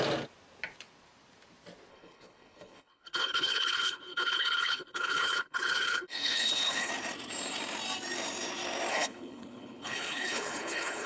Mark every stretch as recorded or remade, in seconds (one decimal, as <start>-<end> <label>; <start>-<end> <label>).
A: 0.0-1.9 recorded; 1.9-6.9 remade; 6.9-8.9 recorded; 8.9-11.1 remade